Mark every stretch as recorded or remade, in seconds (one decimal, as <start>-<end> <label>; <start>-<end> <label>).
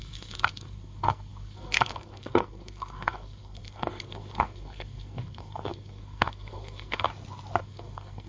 0.0-7.1 remade; 7.1-7.6 recorded; 7.6-8.3 remade